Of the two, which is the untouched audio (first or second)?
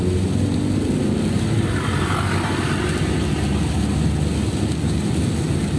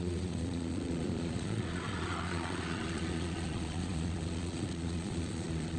first